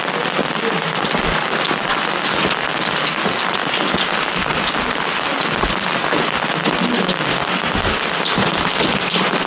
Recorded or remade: recorded